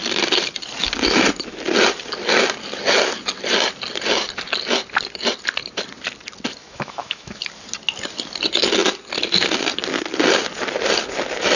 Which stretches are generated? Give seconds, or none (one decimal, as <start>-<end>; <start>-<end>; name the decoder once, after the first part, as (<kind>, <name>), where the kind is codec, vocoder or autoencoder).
6.6-7.4 (autoencoder, DAC-VAE)